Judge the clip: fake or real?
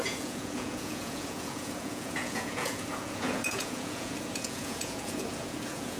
fake